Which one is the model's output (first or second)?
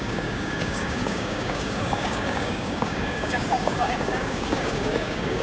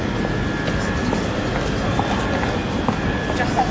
first